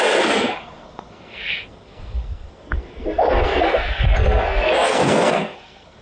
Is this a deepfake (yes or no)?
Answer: yes